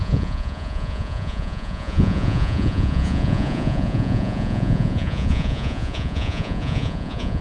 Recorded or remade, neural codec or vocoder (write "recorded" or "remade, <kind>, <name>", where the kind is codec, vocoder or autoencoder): remade, vocoder, Vocos